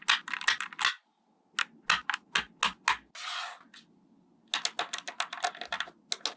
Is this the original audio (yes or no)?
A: yes